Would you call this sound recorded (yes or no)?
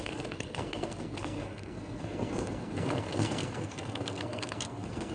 no